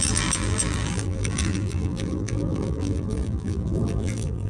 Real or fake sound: fake